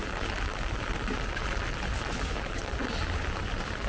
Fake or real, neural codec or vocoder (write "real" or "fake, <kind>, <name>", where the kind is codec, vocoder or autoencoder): real